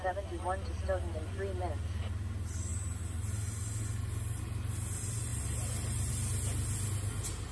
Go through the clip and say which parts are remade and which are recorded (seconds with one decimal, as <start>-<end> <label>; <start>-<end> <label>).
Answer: 0.0-7.5 recorded